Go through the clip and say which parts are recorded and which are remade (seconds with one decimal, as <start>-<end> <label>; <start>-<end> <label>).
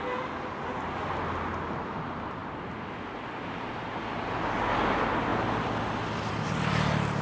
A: 0.0-7.2 recorded